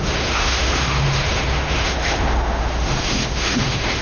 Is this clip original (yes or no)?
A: no